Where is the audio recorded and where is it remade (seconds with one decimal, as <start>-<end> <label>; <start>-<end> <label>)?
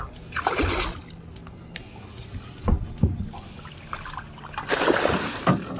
0.0-5.8 recorded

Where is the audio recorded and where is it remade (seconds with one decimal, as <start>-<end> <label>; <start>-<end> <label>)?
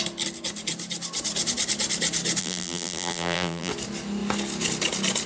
0.0-2.4 recorded; 2.4-3.7 remade; 3.7-5.3 recorded